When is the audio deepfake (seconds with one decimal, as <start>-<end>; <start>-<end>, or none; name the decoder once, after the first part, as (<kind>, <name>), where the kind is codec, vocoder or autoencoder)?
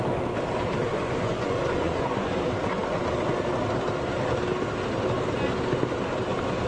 0.9-2.4 (vocoder, Vocos)